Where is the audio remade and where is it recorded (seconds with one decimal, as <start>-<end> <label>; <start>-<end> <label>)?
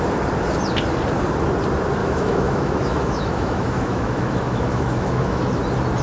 0.0-2.0 recorded; 2.0-5.6 remade; 5.6-6.0 recorded